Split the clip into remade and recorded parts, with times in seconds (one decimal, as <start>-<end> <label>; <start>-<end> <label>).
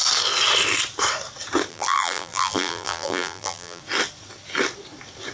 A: 0.0-1.7 recorded; 1.7-3.8 remade; 3.8-5.3 recorded